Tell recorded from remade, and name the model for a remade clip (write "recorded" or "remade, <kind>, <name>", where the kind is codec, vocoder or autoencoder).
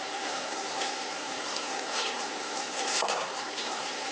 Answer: remade, codec, SNAC